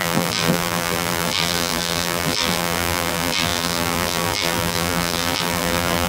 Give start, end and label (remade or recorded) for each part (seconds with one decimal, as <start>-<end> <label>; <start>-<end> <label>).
0.0-6.1 remade